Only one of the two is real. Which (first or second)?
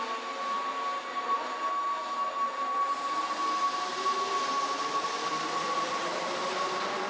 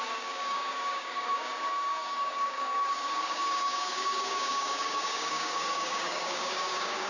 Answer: first